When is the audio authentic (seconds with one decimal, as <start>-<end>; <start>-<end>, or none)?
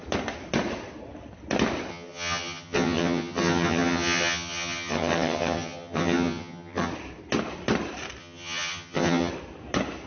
0.0-1.9; 6.9-8.2; 9.3-10.1